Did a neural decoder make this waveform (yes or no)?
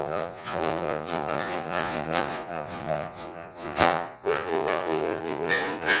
yes